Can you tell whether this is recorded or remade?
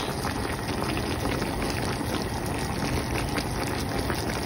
recorded